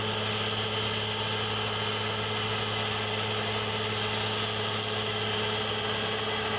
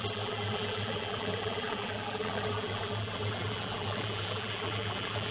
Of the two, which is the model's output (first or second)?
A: second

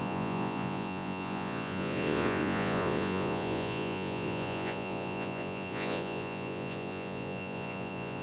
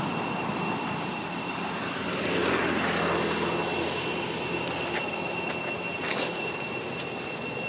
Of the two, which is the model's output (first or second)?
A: first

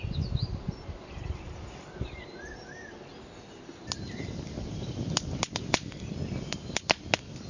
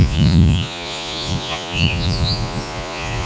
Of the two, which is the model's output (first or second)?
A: second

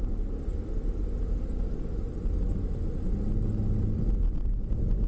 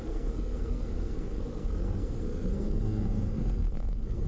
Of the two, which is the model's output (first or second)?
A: second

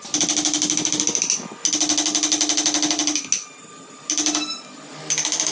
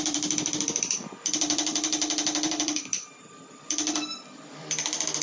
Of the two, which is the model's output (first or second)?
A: second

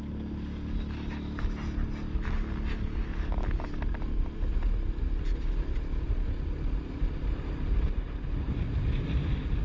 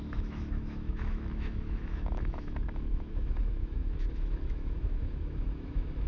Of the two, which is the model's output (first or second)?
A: second